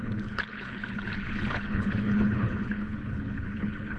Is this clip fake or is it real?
fake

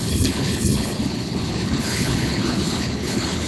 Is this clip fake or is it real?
fake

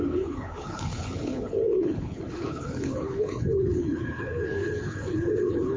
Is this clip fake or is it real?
fake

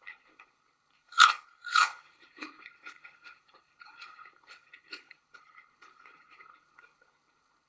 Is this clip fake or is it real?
fake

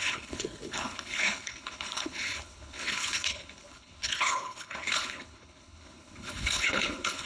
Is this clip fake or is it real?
fake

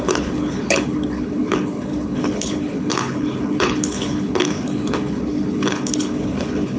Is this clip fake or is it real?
fake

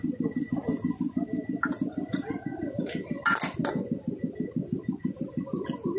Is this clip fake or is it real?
real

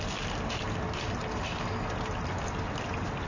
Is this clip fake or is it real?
real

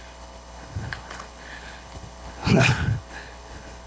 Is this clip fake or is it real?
fake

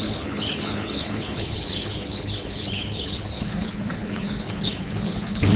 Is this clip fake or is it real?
fake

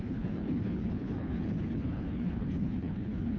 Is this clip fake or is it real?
fake